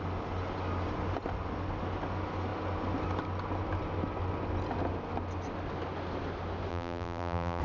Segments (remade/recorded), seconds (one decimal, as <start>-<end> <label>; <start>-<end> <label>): 0.0-6.7 recorded; 6.7-7.6 remade